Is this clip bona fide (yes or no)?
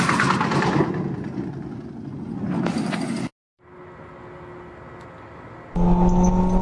yes